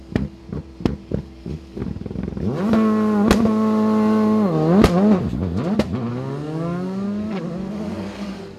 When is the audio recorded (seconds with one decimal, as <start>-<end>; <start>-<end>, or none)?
0.4-1.2; 1.8-6.1